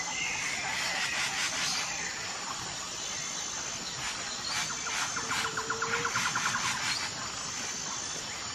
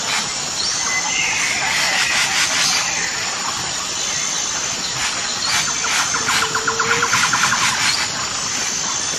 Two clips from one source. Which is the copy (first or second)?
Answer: second